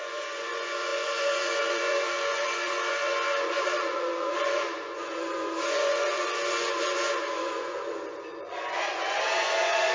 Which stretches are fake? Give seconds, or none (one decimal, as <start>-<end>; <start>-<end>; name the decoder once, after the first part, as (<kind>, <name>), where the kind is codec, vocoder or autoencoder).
0.0-9.9 (vocoder, Vocos)